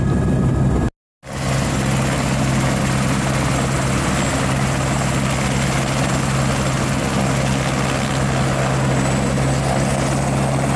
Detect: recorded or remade recorded